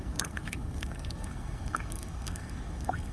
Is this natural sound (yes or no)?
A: no